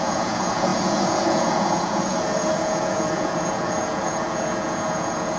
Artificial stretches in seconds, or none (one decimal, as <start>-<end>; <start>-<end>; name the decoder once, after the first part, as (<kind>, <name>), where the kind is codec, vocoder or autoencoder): 0.0-5.4 (vocoder, Vocos)